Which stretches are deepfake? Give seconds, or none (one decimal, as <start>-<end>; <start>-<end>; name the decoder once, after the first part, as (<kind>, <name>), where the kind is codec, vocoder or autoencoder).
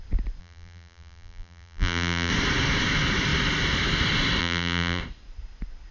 0.4-2.3 (vocoder, BigVGAN v2); 4.4-5.0